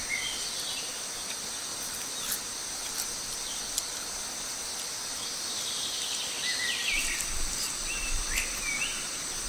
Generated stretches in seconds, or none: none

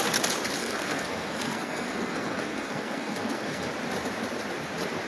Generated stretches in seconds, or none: 0.6-3.7 (codec, SNAC)

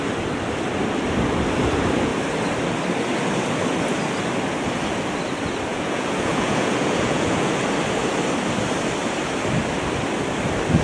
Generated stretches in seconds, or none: 5.7-7.6 (vocoder, Vocos)